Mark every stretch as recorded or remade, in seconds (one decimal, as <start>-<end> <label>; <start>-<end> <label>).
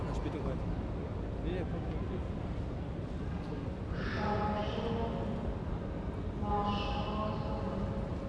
0.0-8.3 recorded